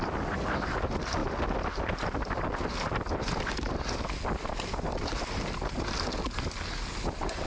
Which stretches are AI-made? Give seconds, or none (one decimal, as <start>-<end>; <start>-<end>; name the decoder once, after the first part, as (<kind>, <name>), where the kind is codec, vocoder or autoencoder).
none